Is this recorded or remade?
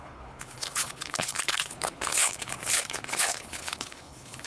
remade